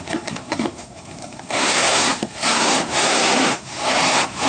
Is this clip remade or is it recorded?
remade